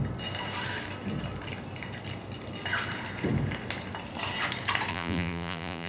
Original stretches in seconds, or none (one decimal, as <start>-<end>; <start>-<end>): 0.0-4.9